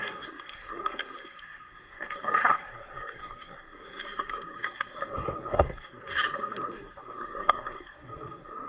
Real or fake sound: fake